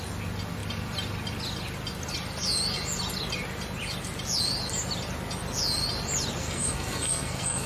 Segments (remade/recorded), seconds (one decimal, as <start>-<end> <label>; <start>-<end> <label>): 0.0-6.4 recorded; 6.4-7.7 remade